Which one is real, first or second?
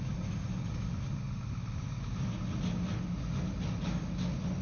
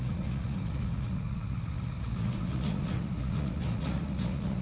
first